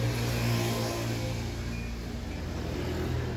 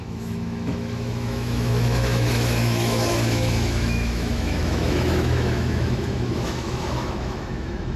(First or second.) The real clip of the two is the first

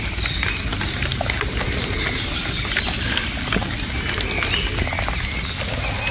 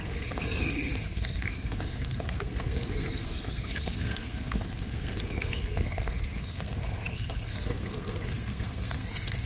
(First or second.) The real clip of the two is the first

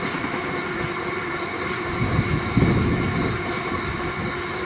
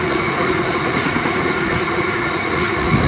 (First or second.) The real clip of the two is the first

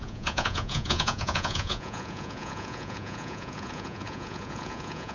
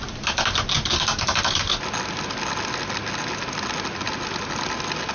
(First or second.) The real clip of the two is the second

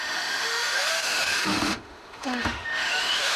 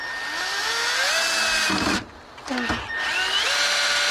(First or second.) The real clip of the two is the second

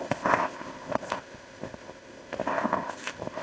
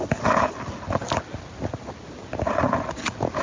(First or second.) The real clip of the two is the second